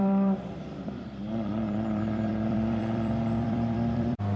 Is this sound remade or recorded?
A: remade